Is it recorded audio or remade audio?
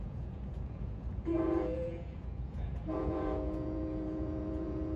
remade